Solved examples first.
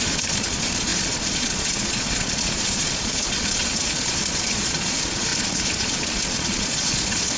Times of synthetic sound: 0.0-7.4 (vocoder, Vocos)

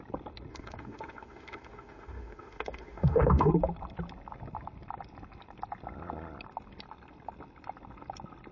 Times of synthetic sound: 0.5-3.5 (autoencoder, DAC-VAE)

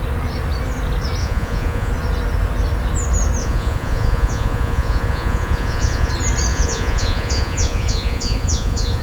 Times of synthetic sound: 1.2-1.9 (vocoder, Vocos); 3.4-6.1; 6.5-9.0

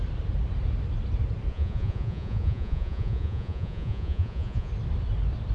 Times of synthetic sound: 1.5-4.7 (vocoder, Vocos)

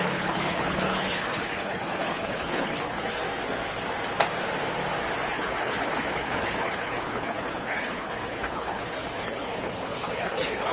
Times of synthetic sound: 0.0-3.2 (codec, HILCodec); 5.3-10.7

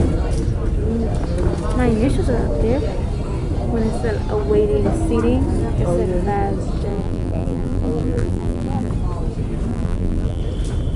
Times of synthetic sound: 6.9-8.9 (vocoder, BigVGAN v2); 9.7-10.4